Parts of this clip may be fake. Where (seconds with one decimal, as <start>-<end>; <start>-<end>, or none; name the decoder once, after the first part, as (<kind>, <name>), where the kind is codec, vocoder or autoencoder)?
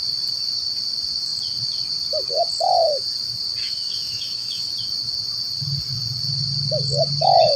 3.6-4.6 (autoencoder, DAC-VAE)